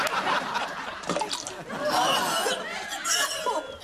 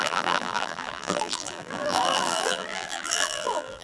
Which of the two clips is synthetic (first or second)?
second